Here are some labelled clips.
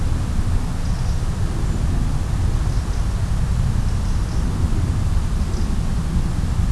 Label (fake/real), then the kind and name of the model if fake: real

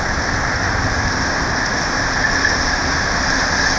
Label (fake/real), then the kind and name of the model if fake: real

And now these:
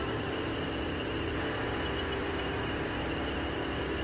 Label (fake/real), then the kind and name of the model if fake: real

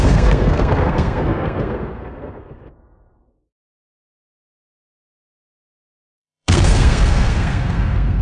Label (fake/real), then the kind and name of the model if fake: fake, codec, SNAC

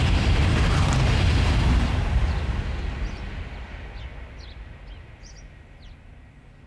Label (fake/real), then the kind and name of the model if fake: real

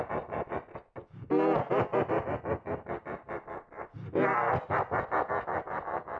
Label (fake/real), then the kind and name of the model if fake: real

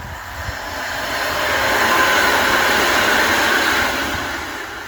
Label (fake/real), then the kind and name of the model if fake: real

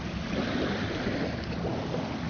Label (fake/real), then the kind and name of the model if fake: real